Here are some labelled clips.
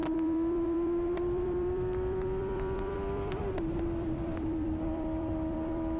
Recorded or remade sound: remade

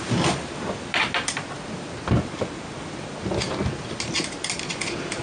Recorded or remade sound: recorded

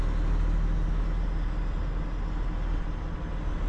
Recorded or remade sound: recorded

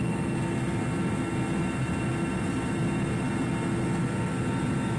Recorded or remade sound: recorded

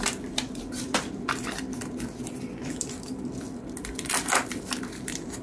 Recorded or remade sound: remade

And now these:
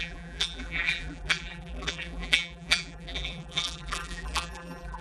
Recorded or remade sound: remade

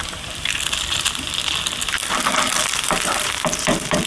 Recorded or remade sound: remade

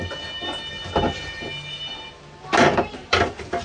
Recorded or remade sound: recorded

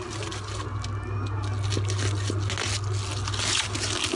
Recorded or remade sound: recorded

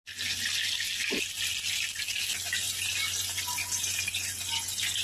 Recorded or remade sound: recorded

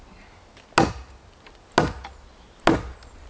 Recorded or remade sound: recorded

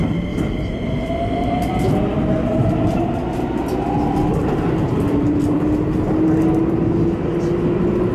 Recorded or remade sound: remade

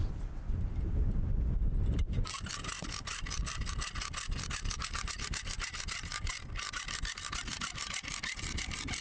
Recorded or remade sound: remade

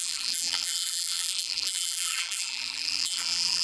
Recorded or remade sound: remade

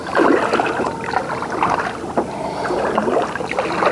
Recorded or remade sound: recorded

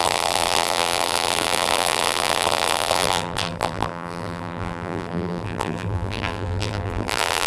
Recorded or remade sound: remade